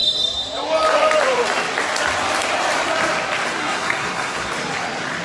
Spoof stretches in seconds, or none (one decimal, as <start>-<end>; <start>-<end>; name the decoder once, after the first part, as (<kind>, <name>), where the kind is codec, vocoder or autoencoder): 3.6-4.5 (codec, SNAC)